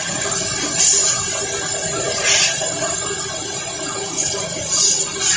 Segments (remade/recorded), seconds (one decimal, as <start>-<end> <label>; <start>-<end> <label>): 0.0-5.4 recorded